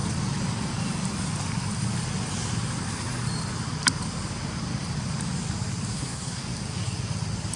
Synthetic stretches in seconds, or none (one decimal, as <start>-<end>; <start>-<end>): 5.9-6.4